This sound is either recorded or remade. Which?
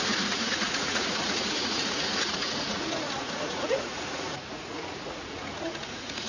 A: remade